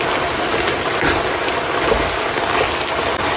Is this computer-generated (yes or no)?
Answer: no